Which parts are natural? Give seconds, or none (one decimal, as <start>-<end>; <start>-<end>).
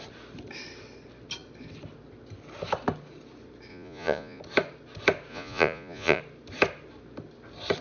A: 0.0-3.7; 4.4-5.3; 6.2-7.8